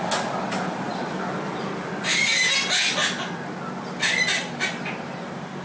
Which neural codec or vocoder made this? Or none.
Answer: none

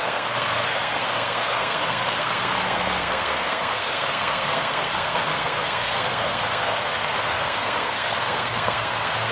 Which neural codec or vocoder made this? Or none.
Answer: codec, SNAC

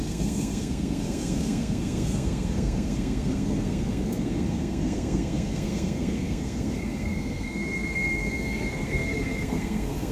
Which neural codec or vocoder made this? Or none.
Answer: codec, SNAC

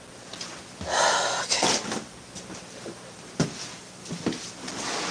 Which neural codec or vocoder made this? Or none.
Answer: none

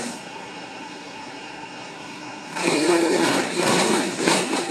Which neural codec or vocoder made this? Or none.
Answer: codec, SNAC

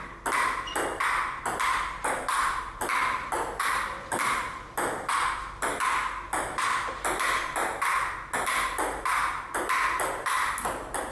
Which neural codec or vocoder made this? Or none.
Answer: none